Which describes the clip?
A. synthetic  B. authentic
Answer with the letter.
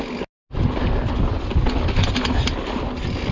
B